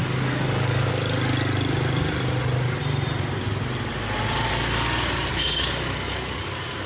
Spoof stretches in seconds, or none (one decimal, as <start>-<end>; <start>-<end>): 0.0-0.9; 5.3-6.5